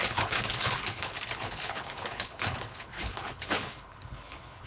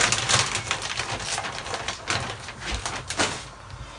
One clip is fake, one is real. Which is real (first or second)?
second